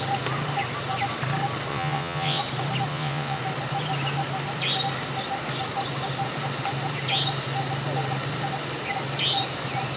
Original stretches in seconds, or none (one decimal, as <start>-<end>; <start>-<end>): 0.0-1.7; 2.4-2.9; 3.4-10.0